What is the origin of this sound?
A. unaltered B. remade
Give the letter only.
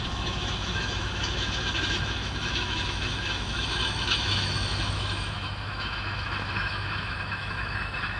B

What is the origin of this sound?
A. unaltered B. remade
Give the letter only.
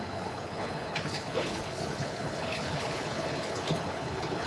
B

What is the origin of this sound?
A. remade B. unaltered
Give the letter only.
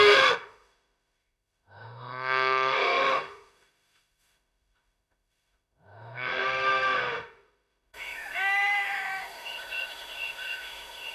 A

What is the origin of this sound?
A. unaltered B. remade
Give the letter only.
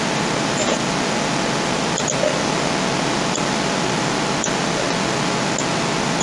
A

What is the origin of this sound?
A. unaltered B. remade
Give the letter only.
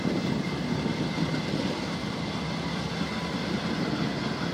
A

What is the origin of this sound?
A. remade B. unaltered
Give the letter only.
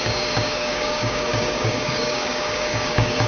A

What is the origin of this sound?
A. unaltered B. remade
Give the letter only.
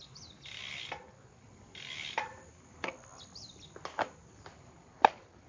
A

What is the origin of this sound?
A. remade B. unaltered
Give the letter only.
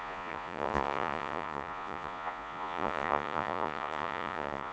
A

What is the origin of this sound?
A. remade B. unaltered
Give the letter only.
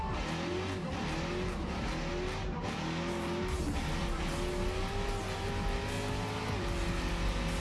B